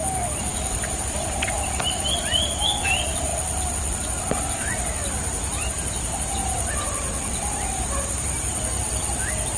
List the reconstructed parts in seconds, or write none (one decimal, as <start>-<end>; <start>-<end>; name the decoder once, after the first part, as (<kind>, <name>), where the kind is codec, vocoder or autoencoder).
none